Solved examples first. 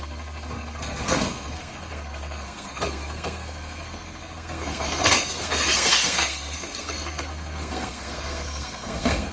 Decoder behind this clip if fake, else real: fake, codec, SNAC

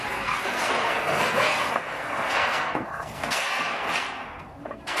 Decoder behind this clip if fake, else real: fake, codec, SNAC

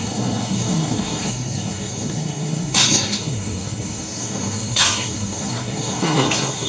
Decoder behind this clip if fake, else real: fake, codec, SNAC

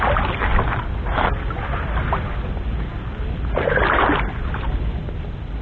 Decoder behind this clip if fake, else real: real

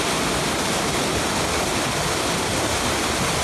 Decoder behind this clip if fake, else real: real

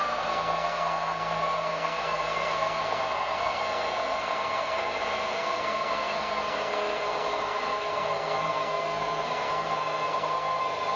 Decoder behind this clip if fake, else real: fake, codec, SNAC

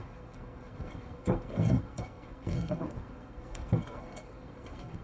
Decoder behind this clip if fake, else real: fake, codec, SNAC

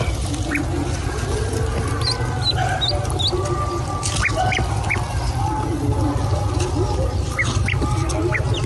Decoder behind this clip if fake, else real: real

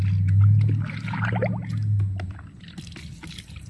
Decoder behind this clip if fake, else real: real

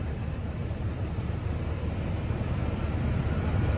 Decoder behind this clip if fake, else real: real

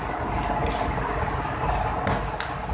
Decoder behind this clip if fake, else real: real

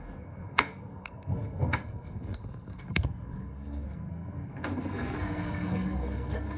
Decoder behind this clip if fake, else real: fake, codec, SNAC